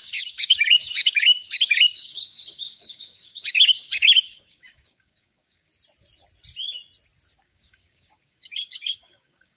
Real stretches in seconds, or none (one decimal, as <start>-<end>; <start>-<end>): 5.7-7.4